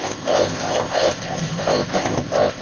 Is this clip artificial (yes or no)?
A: yes